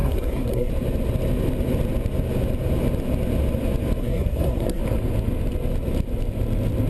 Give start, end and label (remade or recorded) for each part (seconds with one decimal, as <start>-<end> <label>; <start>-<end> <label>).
0.0-0.7 remade; 0.7-4.0 recorded; 4.0-4.8 remade; 4.8-6.9 recorded